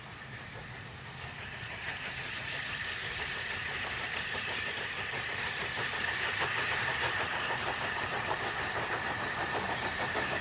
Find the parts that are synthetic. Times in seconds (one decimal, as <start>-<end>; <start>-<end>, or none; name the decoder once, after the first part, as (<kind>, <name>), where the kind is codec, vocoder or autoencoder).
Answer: 0.0-10.4 (vocoder, BigVGAN v2)